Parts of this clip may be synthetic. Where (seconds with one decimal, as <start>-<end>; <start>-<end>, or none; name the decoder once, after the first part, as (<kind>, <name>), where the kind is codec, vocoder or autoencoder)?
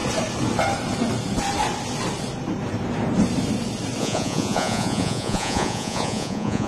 4.0-6.7 (vocoder, Vocos)